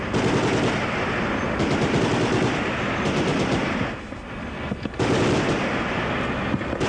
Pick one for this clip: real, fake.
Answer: real